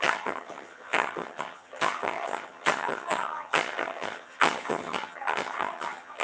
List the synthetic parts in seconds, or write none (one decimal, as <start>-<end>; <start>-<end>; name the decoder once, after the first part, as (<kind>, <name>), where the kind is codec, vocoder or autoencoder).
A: 0.0-6.2 (vocoder, HiFi-GAN)